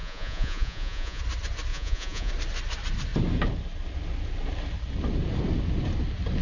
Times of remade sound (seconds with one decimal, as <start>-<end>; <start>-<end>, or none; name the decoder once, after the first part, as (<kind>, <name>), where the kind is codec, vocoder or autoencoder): 0.0-1.2 (vocoder, Vocos); 1.7-2.3

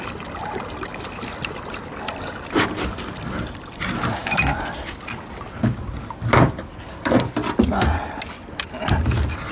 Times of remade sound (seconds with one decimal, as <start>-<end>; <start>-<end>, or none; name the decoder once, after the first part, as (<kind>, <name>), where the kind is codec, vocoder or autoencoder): none

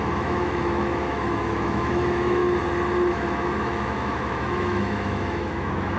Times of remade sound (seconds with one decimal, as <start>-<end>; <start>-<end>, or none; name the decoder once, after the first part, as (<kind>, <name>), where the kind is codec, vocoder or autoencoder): 0.0-2.4 (autoencoder, DAC-VAE); 3.1-6.0

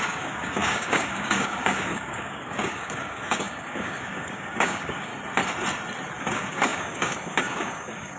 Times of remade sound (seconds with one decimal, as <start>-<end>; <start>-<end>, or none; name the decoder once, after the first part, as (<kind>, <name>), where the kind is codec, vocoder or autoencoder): 0.0-5.1 (codec, DAC); 6.2-8.2

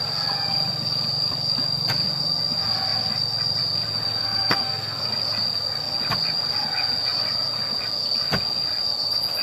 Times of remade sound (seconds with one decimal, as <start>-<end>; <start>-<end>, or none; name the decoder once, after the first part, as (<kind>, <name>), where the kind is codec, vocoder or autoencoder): 4.2-5.0 (codec, SNAC)

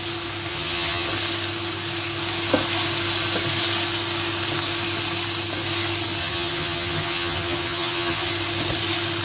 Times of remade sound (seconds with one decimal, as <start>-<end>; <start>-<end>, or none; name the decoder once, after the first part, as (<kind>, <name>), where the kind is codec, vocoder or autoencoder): 0.5-1.1 (vocoder, HiFi-GAN); 6.2-8.3

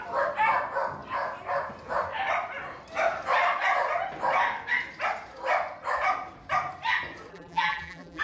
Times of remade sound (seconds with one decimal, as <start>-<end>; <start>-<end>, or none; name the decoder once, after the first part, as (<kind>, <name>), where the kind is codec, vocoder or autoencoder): 7.3-8.2 (vocoder, BigVGAN v2)